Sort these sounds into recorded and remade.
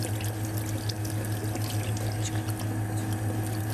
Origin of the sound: recorded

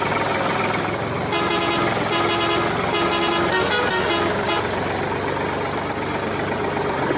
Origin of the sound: recorded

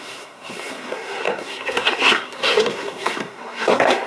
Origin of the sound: remade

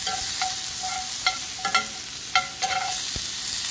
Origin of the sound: recorded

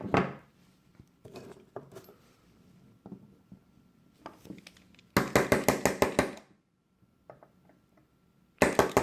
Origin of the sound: recorded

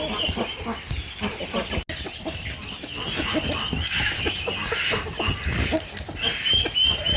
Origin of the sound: recorded